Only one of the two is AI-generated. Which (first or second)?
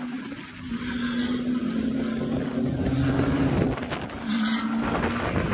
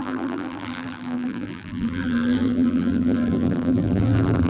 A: second